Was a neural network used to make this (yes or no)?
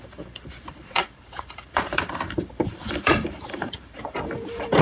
yes